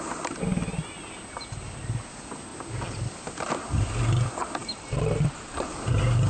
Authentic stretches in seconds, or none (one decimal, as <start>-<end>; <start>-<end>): 0.0-4.6; 5.7-6.3